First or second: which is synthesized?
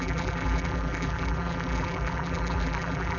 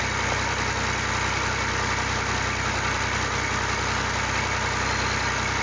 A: first